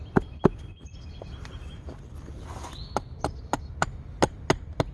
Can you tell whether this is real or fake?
real